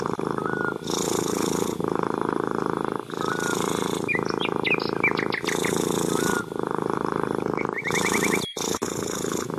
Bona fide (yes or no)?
yes